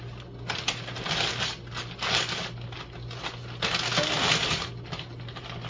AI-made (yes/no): no